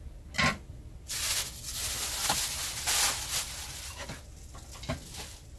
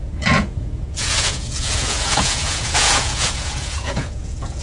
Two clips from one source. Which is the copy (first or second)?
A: second